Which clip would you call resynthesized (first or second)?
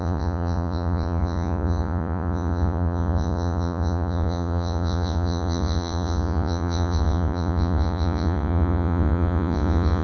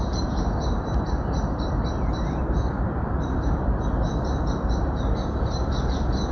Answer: first